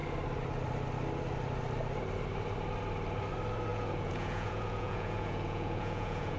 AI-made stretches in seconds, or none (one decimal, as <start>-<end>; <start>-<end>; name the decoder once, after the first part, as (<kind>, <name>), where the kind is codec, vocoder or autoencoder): 3.7-6.4 (vocoder, Vocos)